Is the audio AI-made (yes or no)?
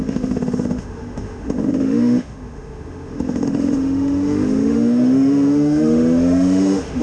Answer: yes